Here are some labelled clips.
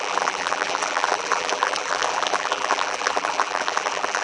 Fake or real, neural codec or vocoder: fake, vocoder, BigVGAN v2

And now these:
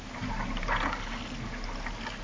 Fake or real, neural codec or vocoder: real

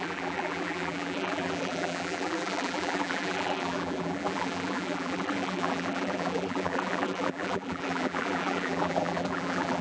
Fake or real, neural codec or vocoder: fake, vocoder, BigVGAN v2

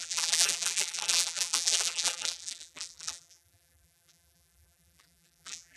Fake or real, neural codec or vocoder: fake, vocoder, BigVGAN v2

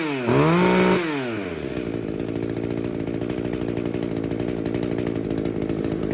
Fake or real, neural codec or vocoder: real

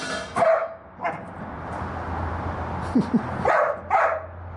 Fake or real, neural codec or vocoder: real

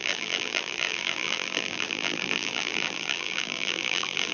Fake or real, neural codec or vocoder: fake, vocoder, BigVGAN v2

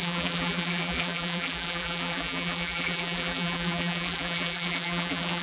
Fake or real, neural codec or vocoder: fake, vocoder, BigVGAN v2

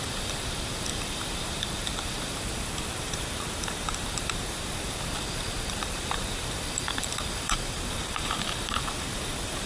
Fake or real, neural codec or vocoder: fake, vocoder, BigVGAN v2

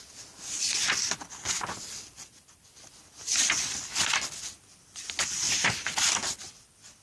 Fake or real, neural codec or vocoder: real